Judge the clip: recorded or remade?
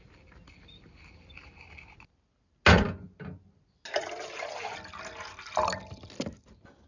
recorded